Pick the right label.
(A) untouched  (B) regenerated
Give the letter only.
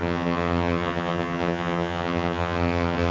B